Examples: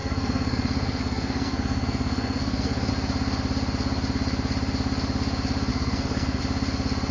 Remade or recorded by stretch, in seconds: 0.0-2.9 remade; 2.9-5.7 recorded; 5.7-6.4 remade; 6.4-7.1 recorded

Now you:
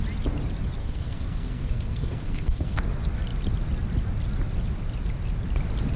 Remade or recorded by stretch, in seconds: 0.0-0.8 recorded; 0.8-2.8 remade; 2.8-6.0 recorded

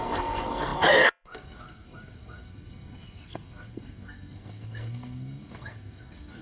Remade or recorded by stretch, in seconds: 0.0-6.4 remade

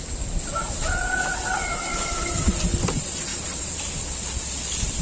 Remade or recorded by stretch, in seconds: 0.0-5.0 recorded

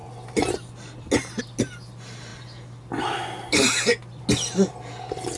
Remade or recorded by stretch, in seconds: 0.0-5.4 recorded

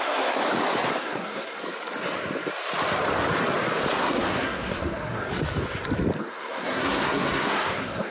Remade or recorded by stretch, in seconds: 0.0-0.4 remade; 0.4-1.0 recorded; 1.0-1.6 remade; 1.6-3.9 recorded; 3.9-5.2 remade; 5.2-6.2 recorded; 6.2-8.1 remade

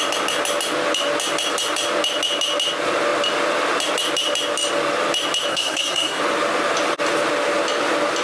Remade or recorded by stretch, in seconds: 0.0-5.5 recorded; 5.5-6.2 remade; 6.2-8.2 recorded

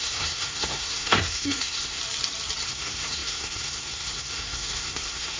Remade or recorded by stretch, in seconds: 0.0-2.0 remade; 2.0-2.6 recorded; 2.6-5.4 remade